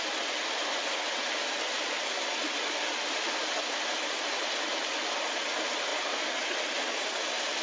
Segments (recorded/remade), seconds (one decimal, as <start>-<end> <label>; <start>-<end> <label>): 0.0-7.6 recorded